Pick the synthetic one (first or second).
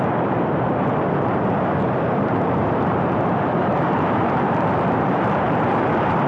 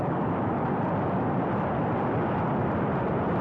first